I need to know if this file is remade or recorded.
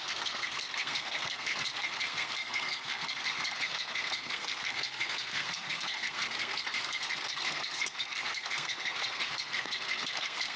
remade